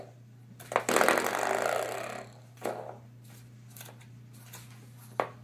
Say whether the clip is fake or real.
real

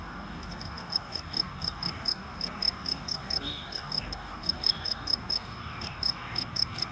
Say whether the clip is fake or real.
fake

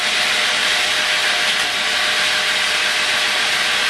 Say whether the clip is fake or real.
real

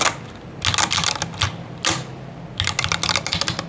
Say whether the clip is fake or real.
real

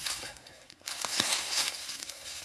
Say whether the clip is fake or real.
fake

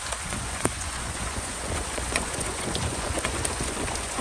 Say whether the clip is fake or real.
fake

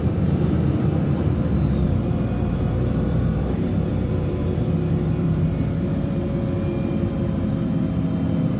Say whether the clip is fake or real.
fake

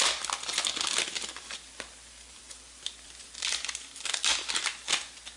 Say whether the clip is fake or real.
real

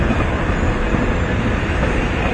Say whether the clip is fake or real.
real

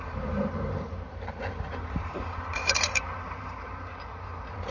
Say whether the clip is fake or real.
fake